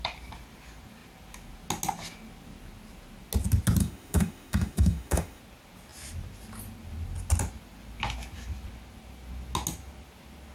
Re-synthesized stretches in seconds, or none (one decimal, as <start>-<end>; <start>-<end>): 3.8-5.4